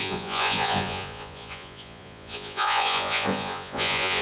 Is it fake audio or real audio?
fake